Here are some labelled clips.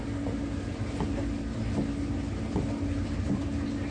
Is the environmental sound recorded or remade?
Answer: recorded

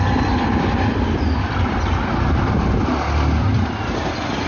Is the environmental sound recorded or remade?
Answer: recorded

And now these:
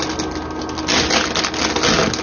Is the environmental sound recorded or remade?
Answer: recorded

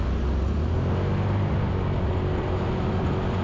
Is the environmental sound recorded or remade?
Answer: recorded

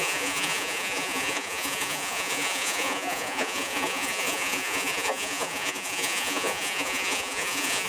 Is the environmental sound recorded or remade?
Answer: remade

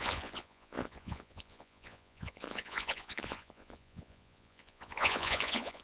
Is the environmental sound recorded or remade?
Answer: remade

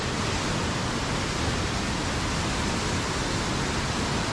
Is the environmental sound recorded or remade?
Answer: recorded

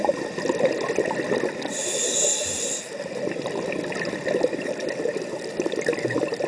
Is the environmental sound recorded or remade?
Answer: recorded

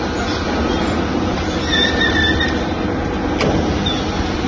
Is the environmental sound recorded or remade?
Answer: recorded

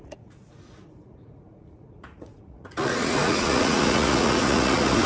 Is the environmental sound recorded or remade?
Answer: remade